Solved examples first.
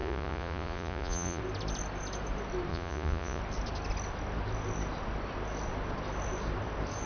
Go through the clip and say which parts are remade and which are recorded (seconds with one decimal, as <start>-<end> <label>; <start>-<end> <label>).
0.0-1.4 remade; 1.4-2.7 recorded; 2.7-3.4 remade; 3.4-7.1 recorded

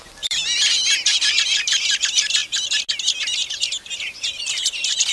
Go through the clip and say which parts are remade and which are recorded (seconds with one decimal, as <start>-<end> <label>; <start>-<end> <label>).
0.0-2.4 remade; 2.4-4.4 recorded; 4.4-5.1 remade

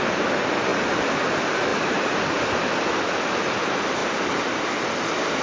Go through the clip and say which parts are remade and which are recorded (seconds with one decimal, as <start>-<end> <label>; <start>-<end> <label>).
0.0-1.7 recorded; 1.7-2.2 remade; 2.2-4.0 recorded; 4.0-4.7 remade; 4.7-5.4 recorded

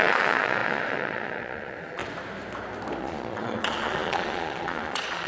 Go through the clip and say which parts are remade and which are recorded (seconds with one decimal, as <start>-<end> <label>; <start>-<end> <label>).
0.0-2.0 remade; 2.0-3.0 recorded; 3.0-5.3 remade

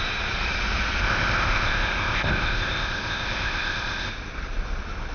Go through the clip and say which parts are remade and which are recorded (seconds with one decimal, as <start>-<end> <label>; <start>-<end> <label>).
0.0-1.0 recorded; 1.0-4.1 remade; 4.1-5.1 recorded

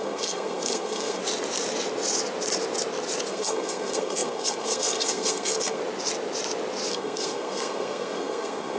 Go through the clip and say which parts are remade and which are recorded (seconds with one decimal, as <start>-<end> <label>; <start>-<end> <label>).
0.0-1.2 remade; 1.2-3.3 recorded; 3.3-5.8 remade; 5.8-6.9 recorded; 6.9-8.8 remade

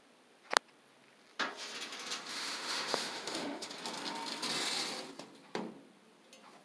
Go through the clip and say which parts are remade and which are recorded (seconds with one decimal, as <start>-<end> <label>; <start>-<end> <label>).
0.0-2.3 recorded; 2.3-3.7 remade; 3.7-6.6 recorded

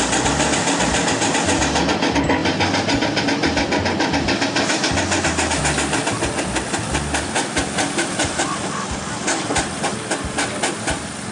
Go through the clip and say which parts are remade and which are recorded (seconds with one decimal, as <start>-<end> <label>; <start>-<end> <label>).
0.0-11.3 recorded